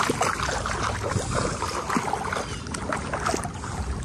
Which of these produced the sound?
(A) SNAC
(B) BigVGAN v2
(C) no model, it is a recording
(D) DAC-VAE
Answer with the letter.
C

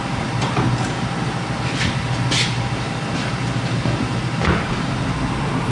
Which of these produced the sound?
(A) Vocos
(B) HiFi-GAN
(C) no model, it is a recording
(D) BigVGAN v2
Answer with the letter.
C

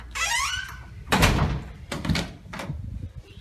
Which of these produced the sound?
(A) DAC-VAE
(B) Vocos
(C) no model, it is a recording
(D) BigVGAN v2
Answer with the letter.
D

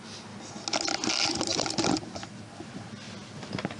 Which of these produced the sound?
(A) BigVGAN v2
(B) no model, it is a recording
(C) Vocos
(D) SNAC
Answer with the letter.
B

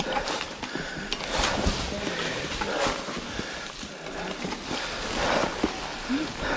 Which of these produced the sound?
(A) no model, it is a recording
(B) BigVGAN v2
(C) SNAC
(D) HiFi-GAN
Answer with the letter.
A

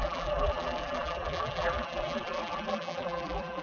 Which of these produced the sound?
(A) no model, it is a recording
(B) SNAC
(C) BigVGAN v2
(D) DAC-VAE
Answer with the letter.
C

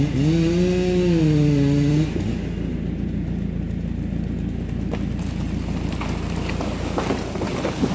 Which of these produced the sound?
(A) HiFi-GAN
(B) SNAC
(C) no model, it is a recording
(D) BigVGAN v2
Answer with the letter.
C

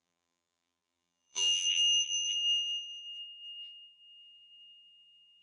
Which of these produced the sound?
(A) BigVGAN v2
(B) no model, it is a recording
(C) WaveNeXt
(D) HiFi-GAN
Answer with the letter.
A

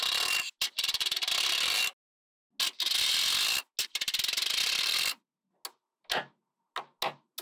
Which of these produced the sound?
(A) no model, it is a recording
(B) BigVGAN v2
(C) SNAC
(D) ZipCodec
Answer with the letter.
A